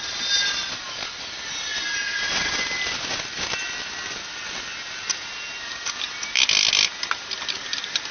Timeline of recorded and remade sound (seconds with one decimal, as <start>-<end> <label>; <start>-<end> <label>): 0.0-8.1 recorded